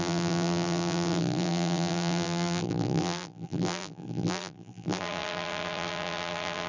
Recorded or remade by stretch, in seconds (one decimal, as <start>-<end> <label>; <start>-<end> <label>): 0.0-6.7 remade